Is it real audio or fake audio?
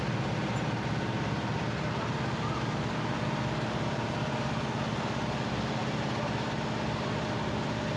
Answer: real